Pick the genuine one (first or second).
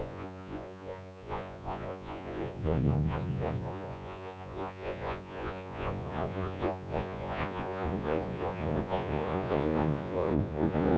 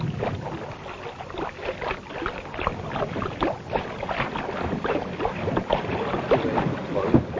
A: second